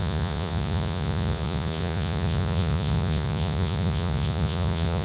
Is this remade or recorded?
remade